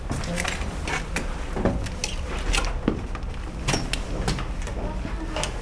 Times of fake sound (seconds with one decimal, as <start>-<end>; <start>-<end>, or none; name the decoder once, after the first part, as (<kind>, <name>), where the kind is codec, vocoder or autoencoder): none